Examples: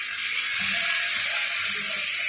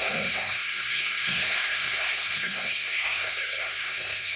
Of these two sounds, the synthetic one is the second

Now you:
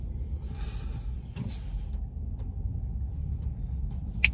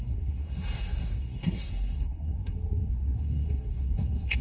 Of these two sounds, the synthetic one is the second